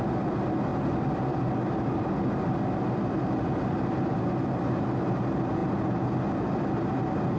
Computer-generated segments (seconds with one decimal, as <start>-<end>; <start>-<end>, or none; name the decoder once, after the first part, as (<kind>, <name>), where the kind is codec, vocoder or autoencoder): none